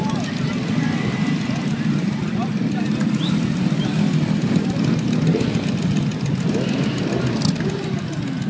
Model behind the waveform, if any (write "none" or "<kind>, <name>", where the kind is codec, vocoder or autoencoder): none